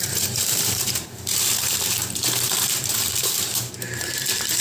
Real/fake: fake